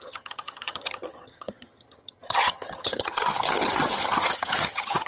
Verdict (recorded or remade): remade